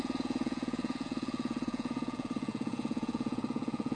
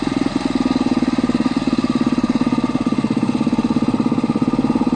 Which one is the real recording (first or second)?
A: second